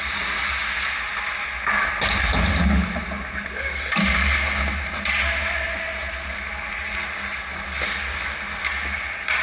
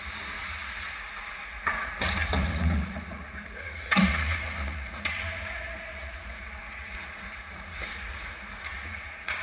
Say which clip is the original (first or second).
first